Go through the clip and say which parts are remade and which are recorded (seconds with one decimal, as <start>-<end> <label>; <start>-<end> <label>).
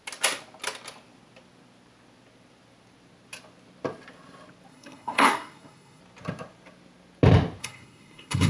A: 0.0-4.7 recorded; 4.7-6.0 remade; 6.0-7.6 recorded; 7.6-8.5 remade